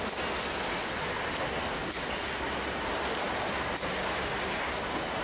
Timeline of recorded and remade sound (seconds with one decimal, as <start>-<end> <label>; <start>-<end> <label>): 0.0-5.2 recorded